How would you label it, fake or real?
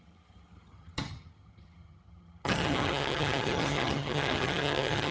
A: fake